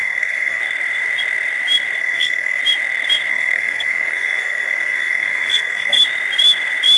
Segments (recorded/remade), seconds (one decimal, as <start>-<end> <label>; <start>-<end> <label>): 0.0-0.6 remade; 0.6-2.0 recorded; 2.0-2.6 remade; 2.6-3.3 recorded; 3.3-6.0 remade; 6.0-7.0 recorded